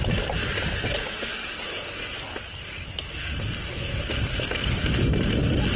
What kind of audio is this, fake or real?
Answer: real